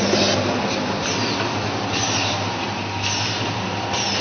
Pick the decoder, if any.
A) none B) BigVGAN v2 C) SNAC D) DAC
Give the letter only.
A